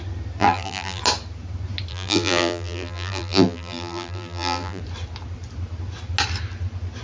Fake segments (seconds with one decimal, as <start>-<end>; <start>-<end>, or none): 0.4-1.0; 1.9-4.8